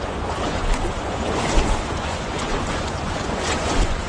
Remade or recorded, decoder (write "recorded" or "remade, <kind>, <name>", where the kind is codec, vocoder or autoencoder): remade, vocoder, Vocos